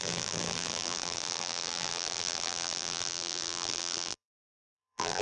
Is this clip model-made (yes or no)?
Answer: yes